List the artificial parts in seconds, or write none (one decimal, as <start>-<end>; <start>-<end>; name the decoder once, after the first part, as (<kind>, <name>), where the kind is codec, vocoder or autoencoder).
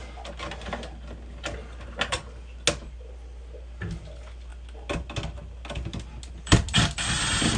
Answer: none